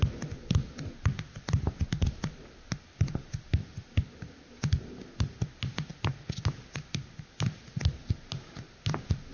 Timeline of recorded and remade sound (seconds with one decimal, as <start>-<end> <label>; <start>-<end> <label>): 0.0-9.3 recorded